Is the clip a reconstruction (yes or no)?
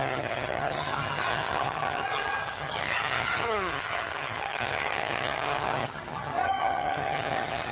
yes